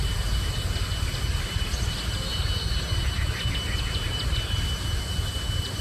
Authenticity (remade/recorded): recorded